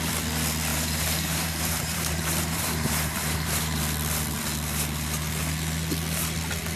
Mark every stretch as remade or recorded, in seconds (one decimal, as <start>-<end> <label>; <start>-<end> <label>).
0.0-0.7 recorded; 0.7-3.8 remade; 3.8-6.8 recorded